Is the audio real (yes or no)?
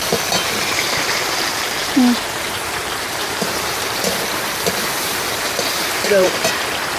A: no